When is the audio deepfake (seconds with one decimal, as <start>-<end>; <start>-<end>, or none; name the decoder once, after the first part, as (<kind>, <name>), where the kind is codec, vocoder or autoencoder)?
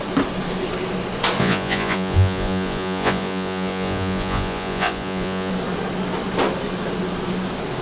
1.4-5.5 (vocoder, Vocos)